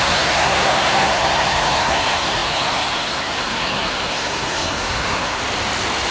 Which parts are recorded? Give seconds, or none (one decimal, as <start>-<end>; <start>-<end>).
5.4-6.1